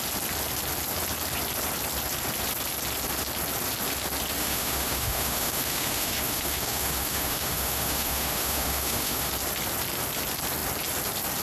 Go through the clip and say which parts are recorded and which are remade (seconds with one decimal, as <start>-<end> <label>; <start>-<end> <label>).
0.0-4.4 recorded; 4.4-9.3 remade; 9.3-11.4 recorded